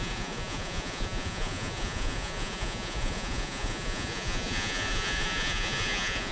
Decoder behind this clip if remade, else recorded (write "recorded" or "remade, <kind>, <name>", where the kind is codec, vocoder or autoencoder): remade, vocoder, Vocos